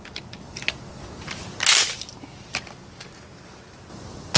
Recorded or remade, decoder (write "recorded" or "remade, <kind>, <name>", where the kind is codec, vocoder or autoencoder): recorded